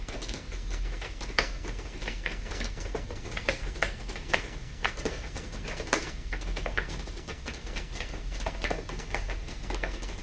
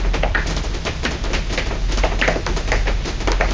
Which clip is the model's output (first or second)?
first